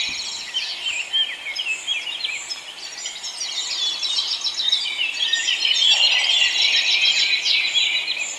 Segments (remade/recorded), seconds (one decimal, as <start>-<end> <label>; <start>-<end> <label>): 0.0-1.2 recorded; 1.2-3.5 remade; 3.5-5.4 recorded; 5.4-7.2 remade; 7.2-8.4 recorded